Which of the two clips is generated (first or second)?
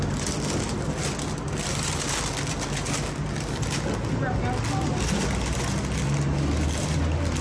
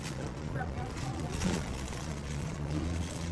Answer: second